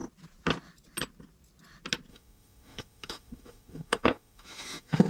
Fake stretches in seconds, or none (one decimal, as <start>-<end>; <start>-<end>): 2.1-5.1